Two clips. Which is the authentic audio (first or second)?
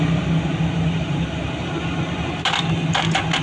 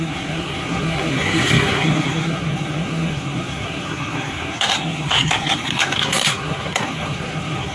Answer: first